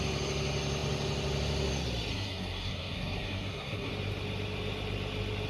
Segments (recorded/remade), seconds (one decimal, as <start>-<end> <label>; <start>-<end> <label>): 0.0-2.1 recorded; 2.1-3.9 remade; 3.9-5.5 recorded